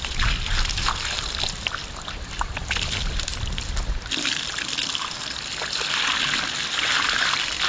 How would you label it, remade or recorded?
recorded